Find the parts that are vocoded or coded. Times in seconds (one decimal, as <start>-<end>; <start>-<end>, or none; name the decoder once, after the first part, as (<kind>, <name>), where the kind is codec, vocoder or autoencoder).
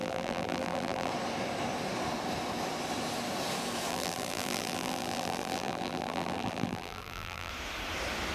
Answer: 0.0-1.1 (vocoder, BigVGAN v2); 3.9-7.5